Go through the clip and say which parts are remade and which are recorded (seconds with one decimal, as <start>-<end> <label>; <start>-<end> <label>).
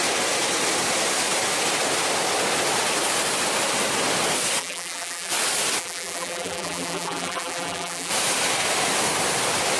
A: 0.0-4.6 recorded; 4.6-5.3 remade; 5.3-5.8 recorded; 5.8-8.1 remade; 8.1-9.8 recorded